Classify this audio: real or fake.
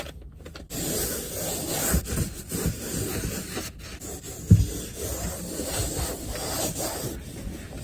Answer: real